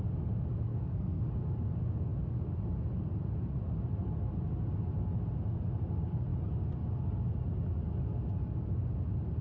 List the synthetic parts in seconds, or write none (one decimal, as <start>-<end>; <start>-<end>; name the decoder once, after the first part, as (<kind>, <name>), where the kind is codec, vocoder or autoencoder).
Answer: 0.7-1.3 (codec, SNAC)